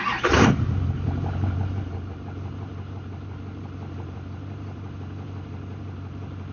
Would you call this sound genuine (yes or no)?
no